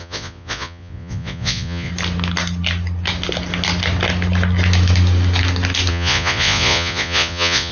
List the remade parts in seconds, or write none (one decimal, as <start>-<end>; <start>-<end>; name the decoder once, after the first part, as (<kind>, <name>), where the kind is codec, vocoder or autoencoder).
0.0-1.9 (vocoder, Vocos); 5.9-7.7